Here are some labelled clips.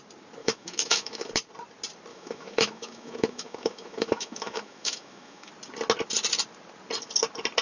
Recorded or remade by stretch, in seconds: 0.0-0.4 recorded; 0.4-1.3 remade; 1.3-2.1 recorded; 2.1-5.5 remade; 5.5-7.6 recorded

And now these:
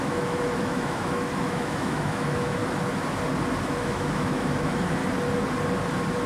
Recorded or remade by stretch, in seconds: 0.0-2.6 remade; 2.6-3.6 recorded; 3.6-5.0 remade; 5.0-6.3 recorded

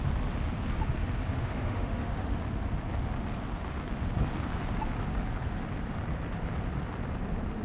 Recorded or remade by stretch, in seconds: 0.0-1.3 recorded; 1.3-2.4 remade; 2.4-7.6 recorded

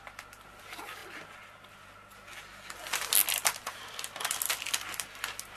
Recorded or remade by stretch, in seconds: 0.0-5.6 recorded

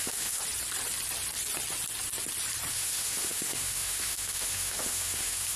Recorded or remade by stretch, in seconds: 0.0-0.4 remade; 0.4-2.7 recorded; 2.7-5.6 remade

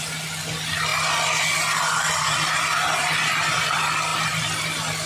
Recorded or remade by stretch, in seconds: 0.0-5.1 recorded